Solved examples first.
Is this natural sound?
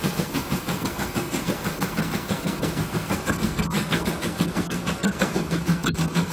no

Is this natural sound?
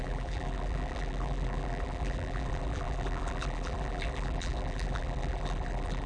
no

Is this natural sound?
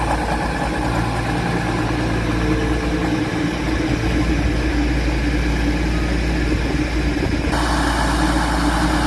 yes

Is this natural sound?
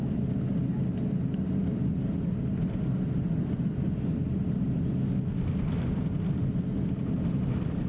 yes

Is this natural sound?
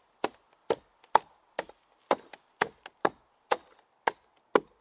yes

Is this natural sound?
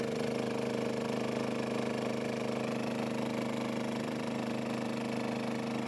yes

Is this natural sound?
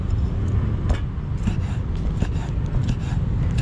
yes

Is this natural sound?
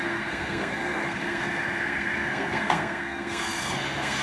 no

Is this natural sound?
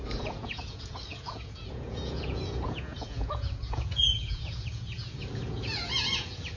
no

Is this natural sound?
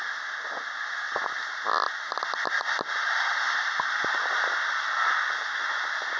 yes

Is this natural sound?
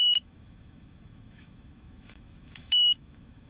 no